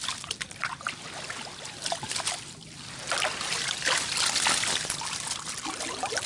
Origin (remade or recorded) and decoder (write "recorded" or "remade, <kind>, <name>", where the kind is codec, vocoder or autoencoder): recorded